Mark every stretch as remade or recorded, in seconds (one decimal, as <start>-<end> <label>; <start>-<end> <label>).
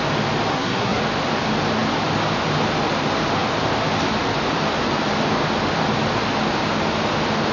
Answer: 0.0-0.5 recorded; 0.5-1.0 remade; 1.0-7.5 recorded